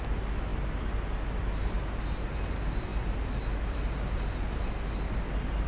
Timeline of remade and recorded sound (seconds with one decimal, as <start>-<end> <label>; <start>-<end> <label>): 0.0-5.7 recorded